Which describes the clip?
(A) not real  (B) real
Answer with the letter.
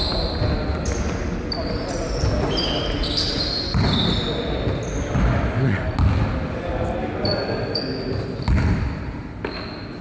B